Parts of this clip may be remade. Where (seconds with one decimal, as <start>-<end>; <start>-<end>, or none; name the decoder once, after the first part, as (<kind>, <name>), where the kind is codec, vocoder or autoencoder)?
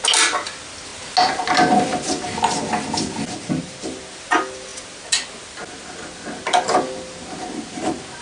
none